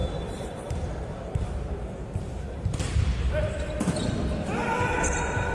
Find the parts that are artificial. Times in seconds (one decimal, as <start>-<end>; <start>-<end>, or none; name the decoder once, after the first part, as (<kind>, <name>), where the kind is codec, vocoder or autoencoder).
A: 0.0-3.3 (vocoder, BigVGAN v2)